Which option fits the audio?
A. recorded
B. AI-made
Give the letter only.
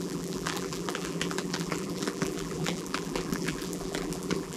B